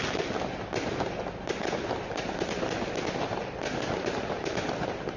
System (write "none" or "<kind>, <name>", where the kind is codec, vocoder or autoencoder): none